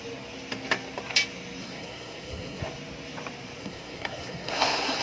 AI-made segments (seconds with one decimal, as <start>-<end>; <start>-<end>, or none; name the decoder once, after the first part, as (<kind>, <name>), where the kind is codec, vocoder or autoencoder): 1.6-2.6 (codec, SNAC); 3.6-5.0